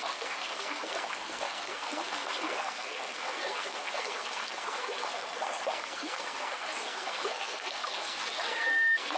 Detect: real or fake fake